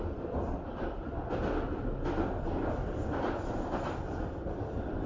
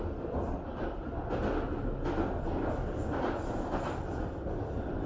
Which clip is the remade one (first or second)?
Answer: first